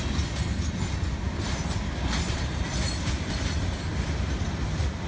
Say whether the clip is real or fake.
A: real